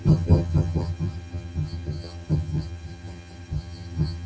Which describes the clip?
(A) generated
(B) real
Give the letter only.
A